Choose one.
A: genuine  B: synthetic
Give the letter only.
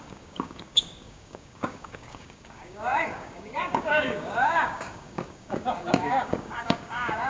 B